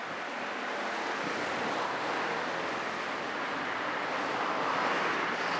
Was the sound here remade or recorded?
recorded